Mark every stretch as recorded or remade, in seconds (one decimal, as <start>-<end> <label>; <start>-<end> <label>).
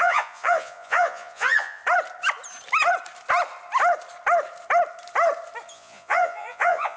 0.0-1.8 remade; 1.8-5.7 recorded; 5.7-7.0 remade